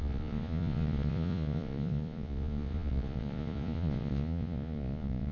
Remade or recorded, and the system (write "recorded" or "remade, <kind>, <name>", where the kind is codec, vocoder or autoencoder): remade, vocoder, Vocos